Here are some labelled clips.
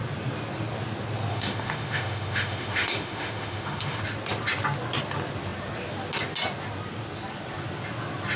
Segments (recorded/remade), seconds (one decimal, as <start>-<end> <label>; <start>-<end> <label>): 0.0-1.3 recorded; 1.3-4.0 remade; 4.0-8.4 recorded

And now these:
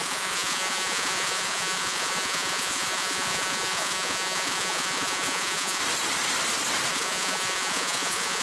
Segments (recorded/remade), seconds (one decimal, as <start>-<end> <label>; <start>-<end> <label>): 0.0-5.8 remade; 5.8-6.9 recorded; 6.9-8.4 remade

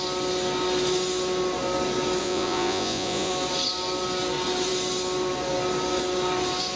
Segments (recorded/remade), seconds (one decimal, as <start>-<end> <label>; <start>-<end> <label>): 0.0-2.2 recorded; 2.2-3.3 remade; 3.3-6.8 recorded

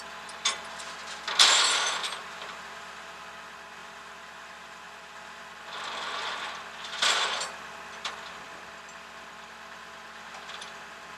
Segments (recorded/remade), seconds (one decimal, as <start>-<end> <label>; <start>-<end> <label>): 0.0-2.0 recorded; 2.0-3.2 remade; 3.2-3.8 recorded; 3.8-5.4 remade; 5.4-11.2 recorded